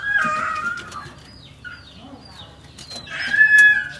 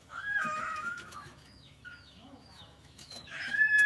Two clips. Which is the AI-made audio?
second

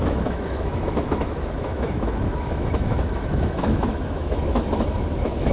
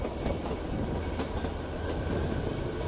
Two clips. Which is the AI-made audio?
first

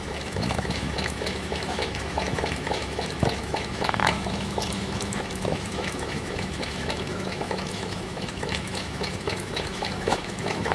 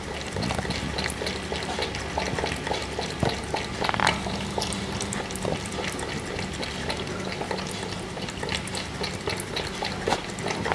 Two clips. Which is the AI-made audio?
first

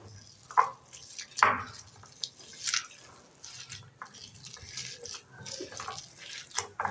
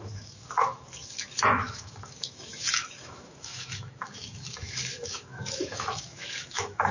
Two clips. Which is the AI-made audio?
second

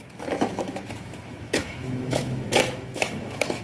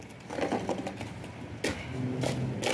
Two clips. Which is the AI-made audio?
first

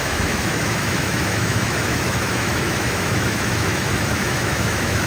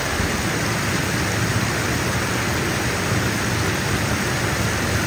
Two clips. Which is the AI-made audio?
first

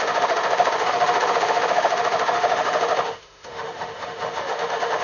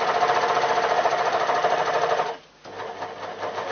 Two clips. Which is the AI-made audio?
first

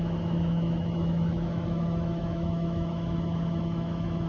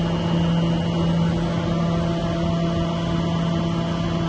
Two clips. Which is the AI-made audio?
first